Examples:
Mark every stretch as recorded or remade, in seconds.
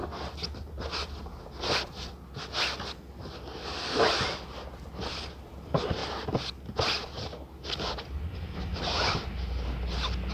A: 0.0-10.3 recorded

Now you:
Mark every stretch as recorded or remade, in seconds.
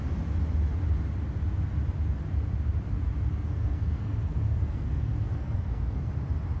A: 0.0-3.3 recorded; 3.3-6.1 remade; 6.1-6.6 recorded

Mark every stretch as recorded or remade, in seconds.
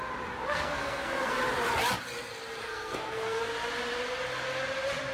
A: 0.0-0.4 recorded; 0.4-1.4 remade; 1.4-2.6 recorded; 2.6-3.4 remade; 3.4-5.1 recorded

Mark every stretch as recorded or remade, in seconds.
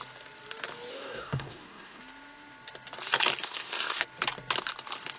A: 0.0-0.9 recorded; 0.9-2.0 remade; 2.0-3.4 recorded; 3.4-4.0 remade; 4.0-5.2 recorded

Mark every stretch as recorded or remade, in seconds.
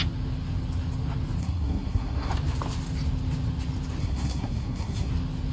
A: 0.0-1.4 recorded; 1.4-2.3 remade; 2.3-4.0 recorded; 4.0-5.1 remade; 5.1-5.5 recorded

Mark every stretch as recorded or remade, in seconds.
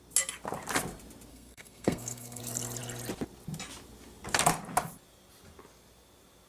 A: 0.0-1.3 recorded; 1.3-2.4 remade; 2.4-6.5 recorded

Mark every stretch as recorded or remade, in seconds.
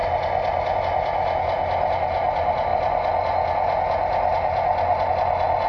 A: 0.0-5.7 recorded